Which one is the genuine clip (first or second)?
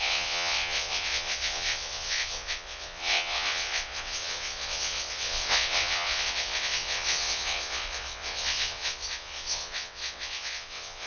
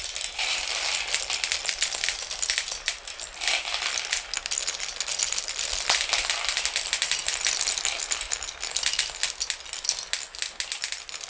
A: second